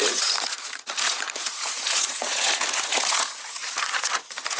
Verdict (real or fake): fake